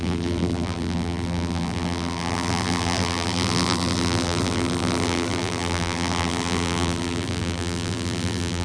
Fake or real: fake